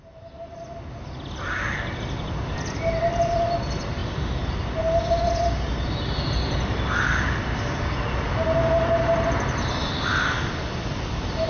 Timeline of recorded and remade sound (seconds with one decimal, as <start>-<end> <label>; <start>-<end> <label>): 0.0-11.5 recorded